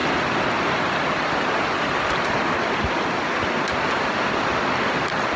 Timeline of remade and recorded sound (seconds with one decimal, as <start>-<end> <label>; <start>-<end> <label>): 0.0-5.4 remade